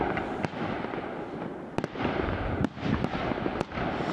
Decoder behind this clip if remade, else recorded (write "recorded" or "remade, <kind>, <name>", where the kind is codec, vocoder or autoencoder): recorded